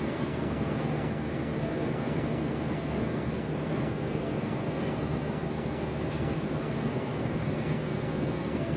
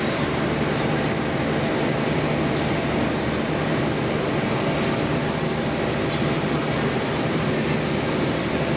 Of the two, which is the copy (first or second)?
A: first